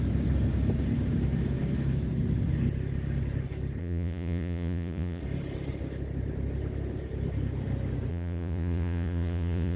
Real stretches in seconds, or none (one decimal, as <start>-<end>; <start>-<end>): 0.0-3.8; 5.2-8.1